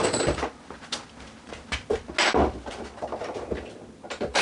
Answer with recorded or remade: recorded